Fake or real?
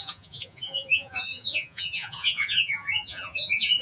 fake